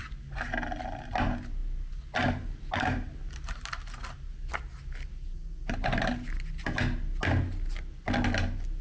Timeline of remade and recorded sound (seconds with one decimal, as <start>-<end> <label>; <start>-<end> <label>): 0.0-8.8 recorded